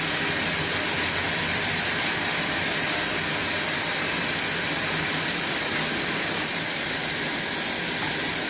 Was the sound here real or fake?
real